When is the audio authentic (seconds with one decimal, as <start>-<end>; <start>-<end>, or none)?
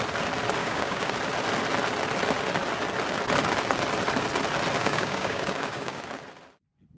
0.0-0.6; 1.1-4.8; 6.0-7.0